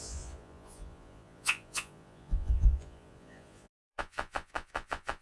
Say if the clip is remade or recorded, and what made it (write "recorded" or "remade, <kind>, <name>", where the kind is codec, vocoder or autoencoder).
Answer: remade, vocoder, Vocos